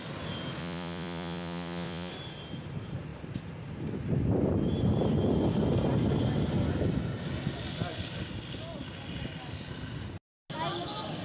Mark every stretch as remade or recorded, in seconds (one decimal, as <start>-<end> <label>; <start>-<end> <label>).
0.0-0.6 recorded; 0.6-2.1 remade; 2.1-11.2 recorded